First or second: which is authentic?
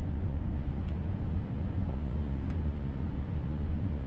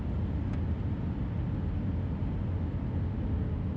second